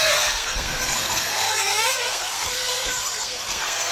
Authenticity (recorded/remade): remade